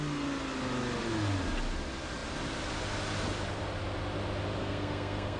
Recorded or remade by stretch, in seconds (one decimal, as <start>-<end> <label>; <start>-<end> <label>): 0.0-4.6 recorded; 4.6-5.4 remade